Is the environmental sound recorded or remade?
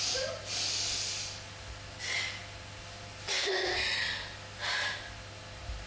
recorded